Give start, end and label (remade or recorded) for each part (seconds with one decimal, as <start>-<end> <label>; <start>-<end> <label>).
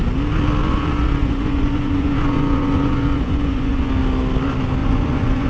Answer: 0.0-0.6 recorded; 0.6-3.9 remade; 3.9-4.8 recorded; 4.8-5.5 remade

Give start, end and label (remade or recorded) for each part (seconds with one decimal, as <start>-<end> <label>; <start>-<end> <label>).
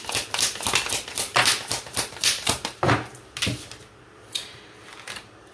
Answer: 0.0-1.3 recorded; 1.3-2.9 remade; 2.9-5.5 recorded